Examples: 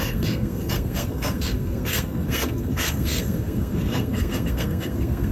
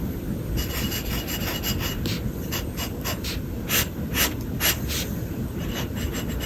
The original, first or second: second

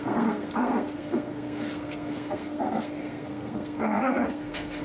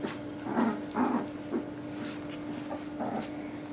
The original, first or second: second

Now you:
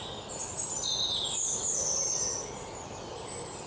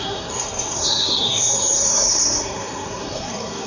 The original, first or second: first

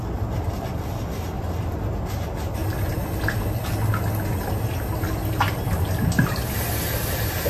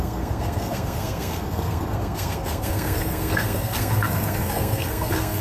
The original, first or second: first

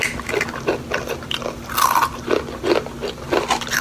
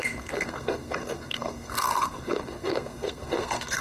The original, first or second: first